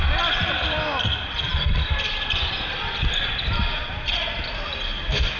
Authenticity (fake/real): real